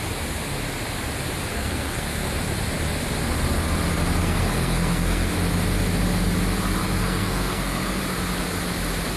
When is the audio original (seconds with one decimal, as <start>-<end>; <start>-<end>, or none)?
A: 0.0-1.5; 2.3-4.2; 5.3-6.8; 8.0-9.2